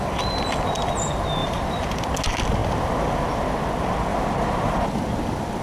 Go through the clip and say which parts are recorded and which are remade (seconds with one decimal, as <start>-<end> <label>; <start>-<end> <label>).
0.0-1.4 recorded; 1.4-2.0 remade; 2.0-4.1 recorded; 4.1-5.0 remade; 5.0-5.6 recorded